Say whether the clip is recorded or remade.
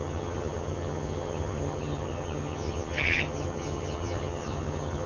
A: remade